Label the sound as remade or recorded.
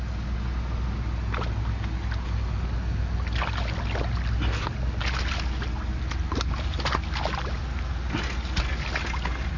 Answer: recorded